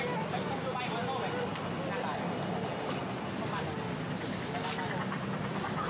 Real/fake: real